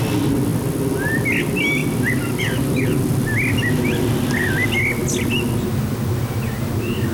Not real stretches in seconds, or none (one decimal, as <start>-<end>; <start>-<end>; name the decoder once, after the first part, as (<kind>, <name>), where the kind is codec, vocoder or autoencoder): none